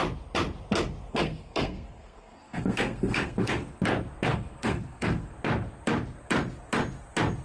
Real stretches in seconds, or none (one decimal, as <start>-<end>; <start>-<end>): 0.0-1.1; 3.8-4.3; 5.3-7.4